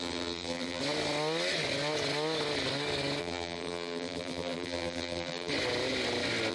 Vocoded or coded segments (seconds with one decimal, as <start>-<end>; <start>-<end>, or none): 0.0-0.8; 3.2-5.5